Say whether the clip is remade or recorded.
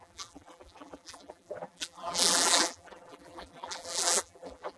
remade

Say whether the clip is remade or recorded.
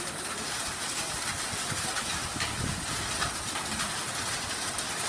recorded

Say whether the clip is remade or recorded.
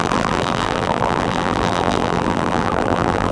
remade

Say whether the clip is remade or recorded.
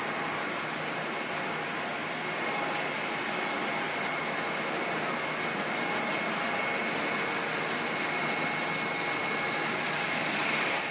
recorded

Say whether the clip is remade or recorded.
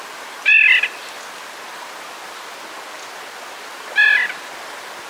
recorded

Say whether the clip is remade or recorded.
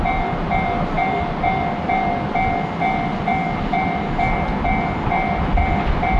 recorded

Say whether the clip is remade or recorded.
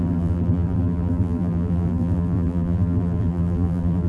remade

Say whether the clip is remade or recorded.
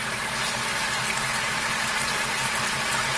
remade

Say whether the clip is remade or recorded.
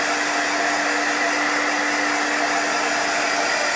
recorded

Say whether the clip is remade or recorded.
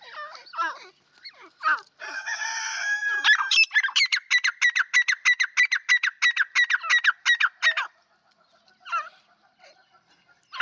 recorded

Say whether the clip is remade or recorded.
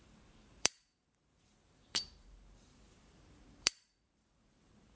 remade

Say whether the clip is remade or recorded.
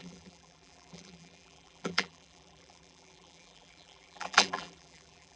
remade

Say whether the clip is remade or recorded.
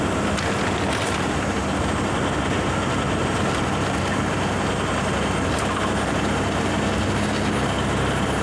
recorded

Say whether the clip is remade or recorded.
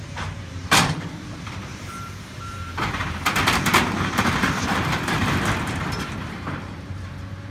remade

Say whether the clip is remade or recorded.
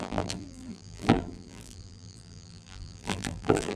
remade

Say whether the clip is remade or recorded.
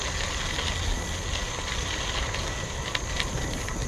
recorded